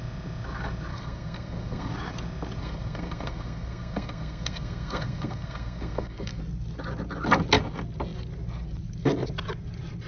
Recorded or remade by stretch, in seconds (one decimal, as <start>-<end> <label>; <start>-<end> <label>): 0.0-0.9 recorded; 0.9-1.9 remade; 1.9-2.6 recorded; 2.6-6.4 remade; 6.4-10.1 recorded